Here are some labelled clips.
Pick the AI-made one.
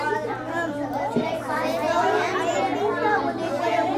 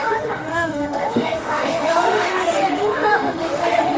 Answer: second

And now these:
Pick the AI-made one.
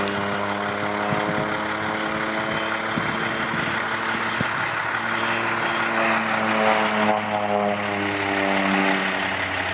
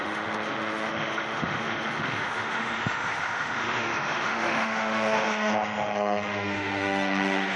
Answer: second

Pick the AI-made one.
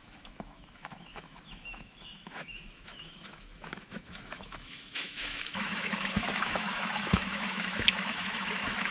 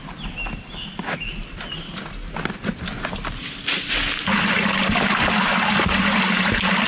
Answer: first